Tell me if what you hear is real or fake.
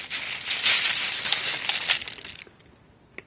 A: real